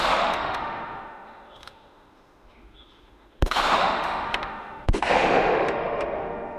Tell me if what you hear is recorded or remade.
remade